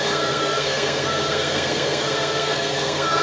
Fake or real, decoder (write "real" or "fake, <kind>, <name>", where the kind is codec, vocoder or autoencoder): fake, codec, SNAC